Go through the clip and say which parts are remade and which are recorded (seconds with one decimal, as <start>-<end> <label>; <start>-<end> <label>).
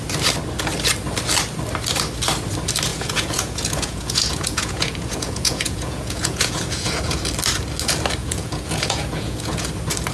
0.0-2.9 recorded; 2.9-7.2 remade; 7.2-8.2 recorded; 8.2-9.6 remade; 9.6-10.1 recorded